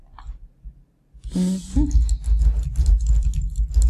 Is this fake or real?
real